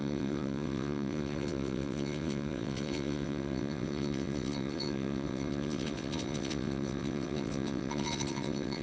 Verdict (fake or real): fake